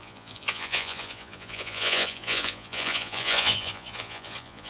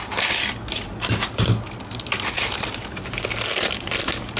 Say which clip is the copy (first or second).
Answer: first